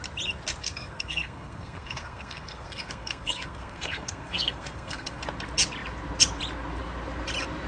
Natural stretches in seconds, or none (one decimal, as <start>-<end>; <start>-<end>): 0.0-0.6; 5.2-7.7